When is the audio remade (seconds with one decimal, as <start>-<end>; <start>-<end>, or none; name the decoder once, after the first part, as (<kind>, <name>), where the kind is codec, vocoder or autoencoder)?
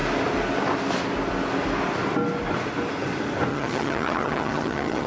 3.5-5.1 (vocoder, HiFi-GAN)